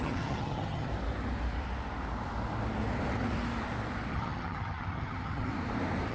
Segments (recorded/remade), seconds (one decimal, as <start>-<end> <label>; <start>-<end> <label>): 0.0-0.9 remade; 0.9-4.1 recorded; 4.1-5.5 remade; 5.5-6.1 recorded